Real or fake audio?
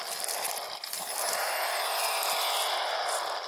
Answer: real